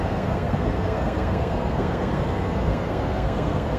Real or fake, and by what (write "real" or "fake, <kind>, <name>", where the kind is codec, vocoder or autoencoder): fake, codec, SNAC